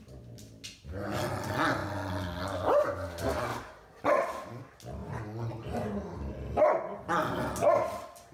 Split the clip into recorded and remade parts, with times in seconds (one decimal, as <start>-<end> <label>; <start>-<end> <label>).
0.0-8.3 recorded